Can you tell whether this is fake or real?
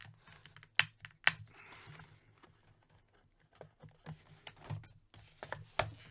real